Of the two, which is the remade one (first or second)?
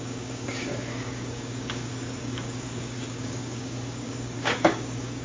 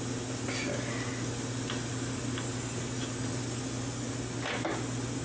first